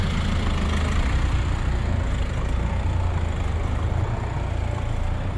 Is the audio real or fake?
real